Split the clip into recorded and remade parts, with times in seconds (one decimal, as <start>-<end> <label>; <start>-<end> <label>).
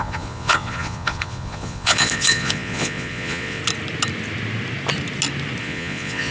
0.0-3.6 remade; 3.6-5.6 recorded; 5.6-6.3 remade